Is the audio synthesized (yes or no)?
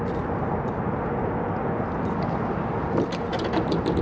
no